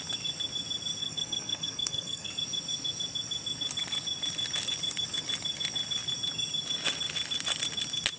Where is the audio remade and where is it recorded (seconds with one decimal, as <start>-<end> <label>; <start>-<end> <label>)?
0.0-1.0 recorded; 1.0-2.3 remade; 2.3-8.2 recorded